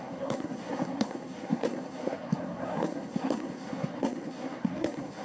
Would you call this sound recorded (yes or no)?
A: no